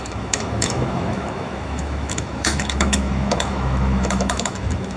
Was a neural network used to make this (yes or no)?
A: yes